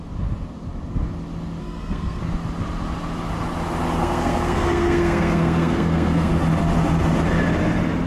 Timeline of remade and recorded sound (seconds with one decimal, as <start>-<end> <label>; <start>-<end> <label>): 0.0-1.6 recorded; 1.6-2.2 remade; 2.2-4.0 recorded; 4.0-6.3 remade; 6.3-8.1 recorded